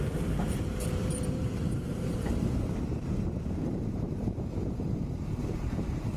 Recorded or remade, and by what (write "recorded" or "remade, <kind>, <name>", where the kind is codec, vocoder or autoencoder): remade, vocoder, BigVGAN v2